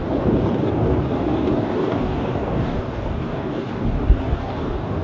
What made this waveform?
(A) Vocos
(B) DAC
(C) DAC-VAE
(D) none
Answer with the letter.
B